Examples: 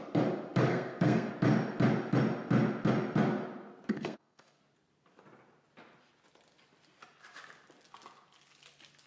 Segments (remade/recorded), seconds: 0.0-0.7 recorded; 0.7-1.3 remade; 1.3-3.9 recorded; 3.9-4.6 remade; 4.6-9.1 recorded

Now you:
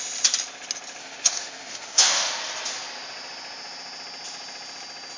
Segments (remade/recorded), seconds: 0.0-1.0 recorded; 1.0-2.3 remade; 2.3-5.2 recorded

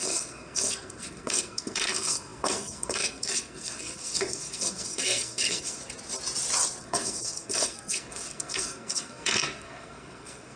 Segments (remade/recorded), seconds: 0.0-5.8 remade; 5.8-6.8 recorded; 6.8-10.6 remade

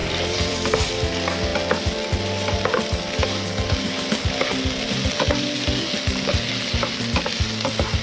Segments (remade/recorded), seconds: 0.0-0.9 remade; 0.9-8.0 recorded

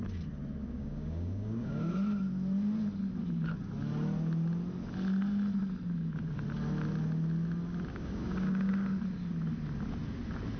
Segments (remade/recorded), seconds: 0.0-0.6 recorded; 0.6-1.9 remade; 1.9-7.9 recorded; 7.9-8.7 remade; 8.7-10.6 recorded